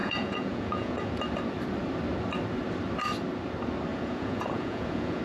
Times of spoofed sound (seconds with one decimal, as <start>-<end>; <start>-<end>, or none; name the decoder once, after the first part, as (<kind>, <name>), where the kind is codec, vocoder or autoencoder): 0.0-1.1 (vocoder, Vocos); 3.9-5.2